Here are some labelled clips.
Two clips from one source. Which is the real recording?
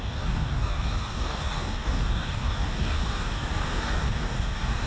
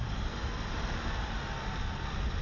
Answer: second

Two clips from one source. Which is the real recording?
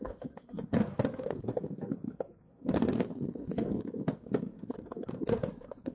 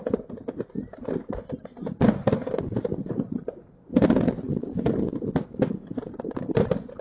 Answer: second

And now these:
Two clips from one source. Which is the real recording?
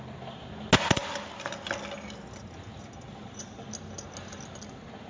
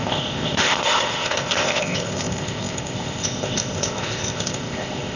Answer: first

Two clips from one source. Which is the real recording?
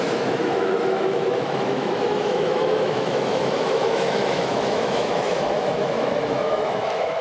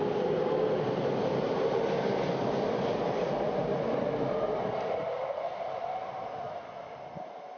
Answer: second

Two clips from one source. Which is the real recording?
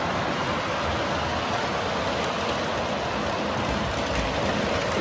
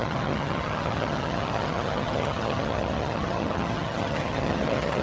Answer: first